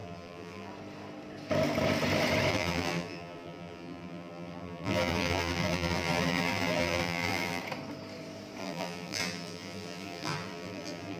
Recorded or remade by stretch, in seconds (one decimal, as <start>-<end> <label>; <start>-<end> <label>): 0.0-0.7 remade; 0.7-2.5 recorded; 2.5-7.6 remade; 7.6-8.6 recorded; 8.6-11.2 remade